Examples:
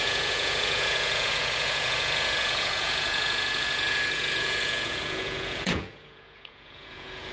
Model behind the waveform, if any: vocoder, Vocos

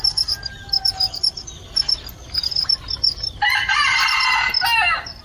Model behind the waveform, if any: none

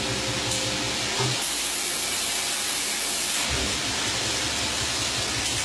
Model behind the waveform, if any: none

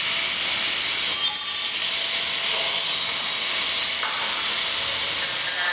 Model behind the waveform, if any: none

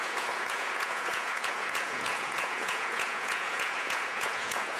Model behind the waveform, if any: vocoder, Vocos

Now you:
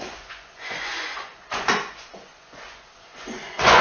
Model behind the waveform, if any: vocoder, Vocos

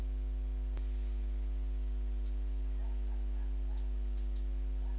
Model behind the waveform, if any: none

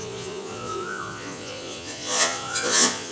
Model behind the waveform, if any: vocoder, Vocos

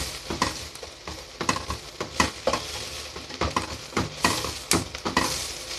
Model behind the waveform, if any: none